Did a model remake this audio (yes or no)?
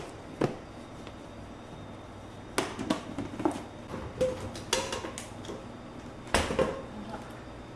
no